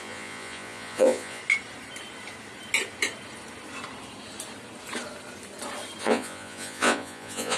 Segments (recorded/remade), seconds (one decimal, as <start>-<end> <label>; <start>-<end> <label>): 0.0-1.4 remade; 1.4-6.0 recorded; 6.0-7.6 remade